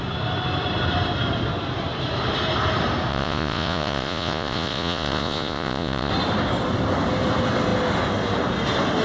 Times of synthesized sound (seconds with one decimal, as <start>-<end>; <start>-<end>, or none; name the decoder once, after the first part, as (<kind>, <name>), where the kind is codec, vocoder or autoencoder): 3.1-6.1 (vocoder, Vocos)